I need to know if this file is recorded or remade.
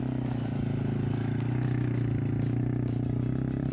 recorded